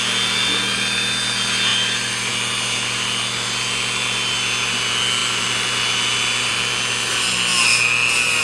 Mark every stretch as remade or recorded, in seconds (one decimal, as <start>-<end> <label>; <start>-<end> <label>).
0.0-1.7 recorded; 1.7-2.3 remade; 2.3-5.2 recorded; 5.2-6.5 remade; 6.5-8.4 recorded